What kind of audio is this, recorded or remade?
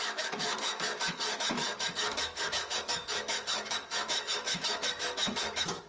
remade